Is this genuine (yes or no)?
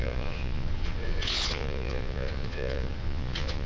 no